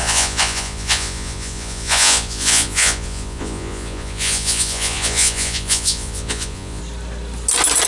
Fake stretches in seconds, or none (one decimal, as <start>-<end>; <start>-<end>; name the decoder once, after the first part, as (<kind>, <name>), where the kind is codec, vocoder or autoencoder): 0.0-6.8 (vocoder, Vocos)